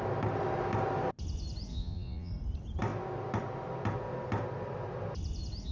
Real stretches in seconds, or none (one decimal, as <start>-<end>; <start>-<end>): 0.0-1.7; 2.3-5.7